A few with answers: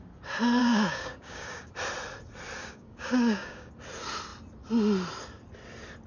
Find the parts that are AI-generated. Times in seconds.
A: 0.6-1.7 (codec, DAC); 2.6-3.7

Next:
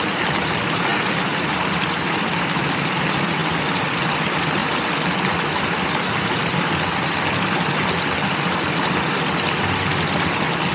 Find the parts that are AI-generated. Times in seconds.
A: none

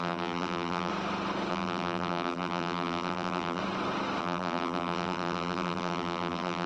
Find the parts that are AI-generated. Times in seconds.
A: 0.0-0.9 (vocoder, BigVGAN v2); 1.5-3.6; 4.2-6.7

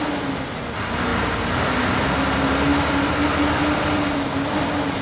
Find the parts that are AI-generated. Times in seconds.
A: none

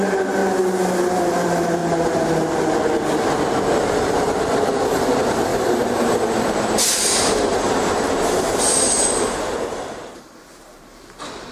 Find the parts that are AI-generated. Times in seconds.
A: 0.0-0.4 (vocoder, BigVGAN v2); 1.1-1.8; 3.8-11.5